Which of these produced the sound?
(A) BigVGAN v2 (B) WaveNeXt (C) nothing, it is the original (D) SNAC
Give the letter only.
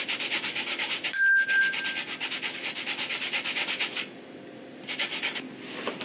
C